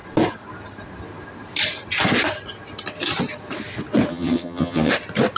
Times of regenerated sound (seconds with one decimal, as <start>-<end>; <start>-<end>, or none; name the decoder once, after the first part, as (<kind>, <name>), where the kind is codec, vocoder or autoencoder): 4.1-4.9 (vocoder, HiFi-GAN)